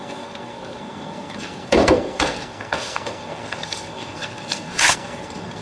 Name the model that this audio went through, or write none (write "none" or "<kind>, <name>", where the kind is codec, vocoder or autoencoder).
codec, SNAC